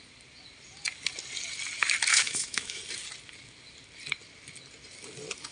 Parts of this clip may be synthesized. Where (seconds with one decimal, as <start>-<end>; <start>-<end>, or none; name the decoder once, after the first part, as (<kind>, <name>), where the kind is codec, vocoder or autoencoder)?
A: 2.1-2.8 (autoencoder, DAC-VAE)